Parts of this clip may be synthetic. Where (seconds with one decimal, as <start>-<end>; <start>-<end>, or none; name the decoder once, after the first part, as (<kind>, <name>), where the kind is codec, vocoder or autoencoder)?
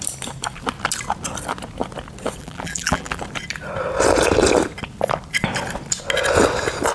2.4-3.2 (vocoder, BigVGAN v2)